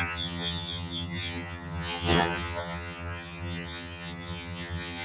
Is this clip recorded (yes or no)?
no